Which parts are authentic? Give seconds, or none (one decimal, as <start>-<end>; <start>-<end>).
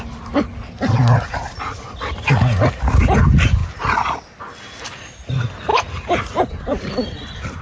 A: 0.0-5.7; 6.9-7.6